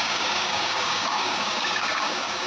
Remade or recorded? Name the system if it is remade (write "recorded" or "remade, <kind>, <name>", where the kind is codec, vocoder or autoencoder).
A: remade, codec, DAC